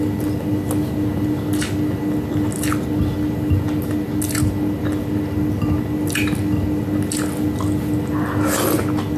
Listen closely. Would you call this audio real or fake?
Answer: real